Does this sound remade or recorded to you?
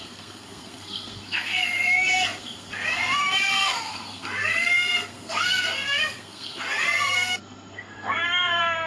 remade